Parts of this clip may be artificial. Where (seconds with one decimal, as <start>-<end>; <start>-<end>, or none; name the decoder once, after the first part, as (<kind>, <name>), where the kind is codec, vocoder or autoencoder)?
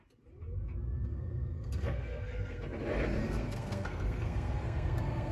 1.1-2.6 (codec, SNAC); 3.2-5.3